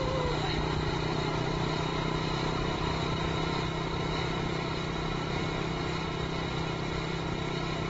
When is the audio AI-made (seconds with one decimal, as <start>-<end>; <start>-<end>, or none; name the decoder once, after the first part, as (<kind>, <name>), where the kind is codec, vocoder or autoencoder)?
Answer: none